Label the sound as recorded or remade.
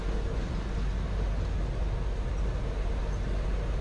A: recorded